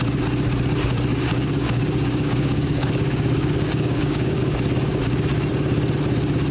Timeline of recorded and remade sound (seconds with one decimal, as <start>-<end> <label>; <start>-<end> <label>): 0.0-1.1 recorded; 1.1-4.4 remade; 4.4-6.5 recorded